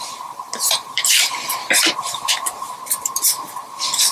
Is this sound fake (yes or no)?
yes